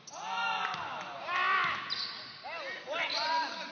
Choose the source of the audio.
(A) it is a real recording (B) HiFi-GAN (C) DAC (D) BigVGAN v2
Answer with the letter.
A